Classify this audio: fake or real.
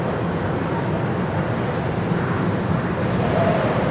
real